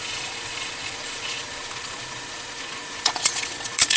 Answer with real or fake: fake